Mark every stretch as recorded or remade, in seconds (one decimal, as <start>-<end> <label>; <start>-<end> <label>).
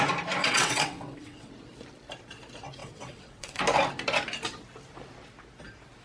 0.0-0.4 recorded; 0.4-1.5 remade; 1.5-2.8 recorded; 2.8-3.6 remade; 3.6-6.0 recorded